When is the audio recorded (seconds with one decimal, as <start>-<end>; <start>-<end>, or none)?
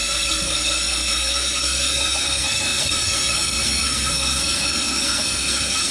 none